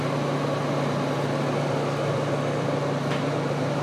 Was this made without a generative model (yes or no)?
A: yes